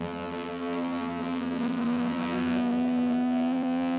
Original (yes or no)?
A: no